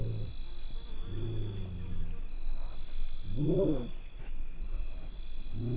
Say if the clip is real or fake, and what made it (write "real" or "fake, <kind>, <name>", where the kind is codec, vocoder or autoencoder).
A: real